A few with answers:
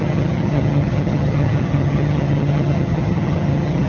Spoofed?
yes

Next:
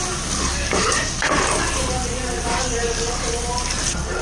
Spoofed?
yes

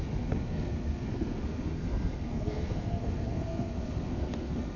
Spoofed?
yes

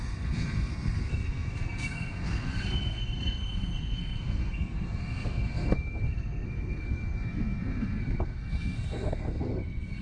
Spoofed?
yes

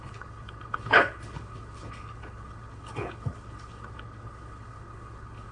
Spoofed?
yes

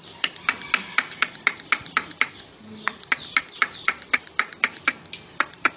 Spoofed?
no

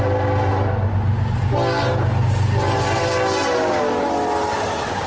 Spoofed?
no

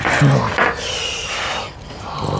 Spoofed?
no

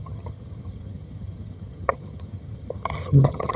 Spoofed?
yes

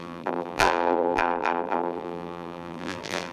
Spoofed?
yes